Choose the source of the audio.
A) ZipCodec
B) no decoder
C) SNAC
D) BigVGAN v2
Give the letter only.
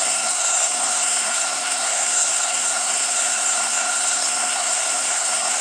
C